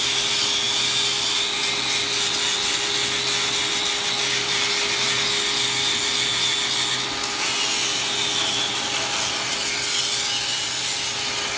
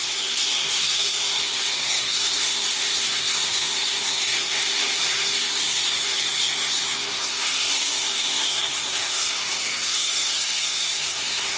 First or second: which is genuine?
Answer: first